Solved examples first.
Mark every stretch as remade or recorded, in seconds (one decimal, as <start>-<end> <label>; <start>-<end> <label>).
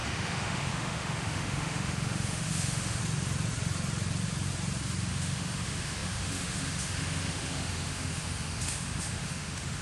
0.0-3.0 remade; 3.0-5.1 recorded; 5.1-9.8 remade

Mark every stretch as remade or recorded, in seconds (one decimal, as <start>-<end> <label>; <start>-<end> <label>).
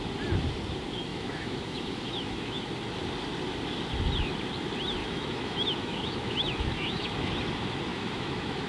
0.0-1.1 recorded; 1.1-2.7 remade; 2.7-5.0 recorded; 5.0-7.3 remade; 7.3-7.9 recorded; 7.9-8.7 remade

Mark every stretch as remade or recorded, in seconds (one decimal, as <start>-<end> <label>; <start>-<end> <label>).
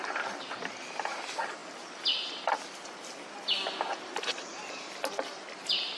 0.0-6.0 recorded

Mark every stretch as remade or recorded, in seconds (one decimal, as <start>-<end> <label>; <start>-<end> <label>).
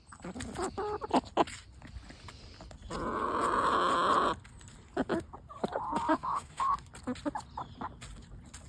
0.0-6.1 recorded; 6.1-6.7 remade; 6.7-8.7 recorded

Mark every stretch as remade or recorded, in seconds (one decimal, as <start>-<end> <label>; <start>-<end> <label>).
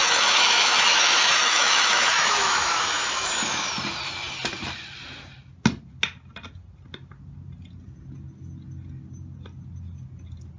0.0-3.7 remade; 3.7-10.6 recorded